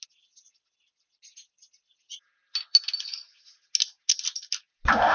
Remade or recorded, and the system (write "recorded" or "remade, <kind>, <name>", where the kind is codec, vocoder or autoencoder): recorded